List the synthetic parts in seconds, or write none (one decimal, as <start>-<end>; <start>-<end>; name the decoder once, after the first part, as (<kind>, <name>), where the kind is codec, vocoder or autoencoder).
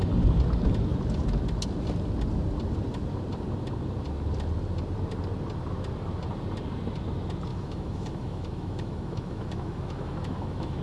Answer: 7.5-10.8 (autoencoder, DAC-VAE)